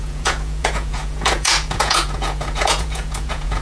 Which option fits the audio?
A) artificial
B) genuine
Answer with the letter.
A